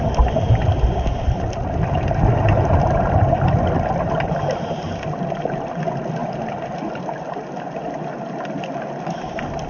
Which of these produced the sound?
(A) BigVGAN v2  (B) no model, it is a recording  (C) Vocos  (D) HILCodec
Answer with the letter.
B